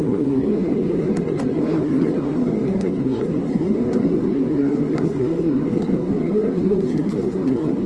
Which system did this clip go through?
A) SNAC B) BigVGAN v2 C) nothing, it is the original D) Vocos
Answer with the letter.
A